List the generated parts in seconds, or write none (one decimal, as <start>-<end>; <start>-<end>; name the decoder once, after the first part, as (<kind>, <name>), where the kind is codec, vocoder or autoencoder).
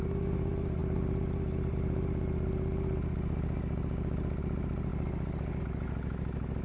none